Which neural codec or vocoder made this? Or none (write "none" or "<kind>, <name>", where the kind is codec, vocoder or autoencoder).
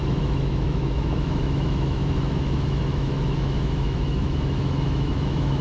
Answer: autoencoder, DAC-VAE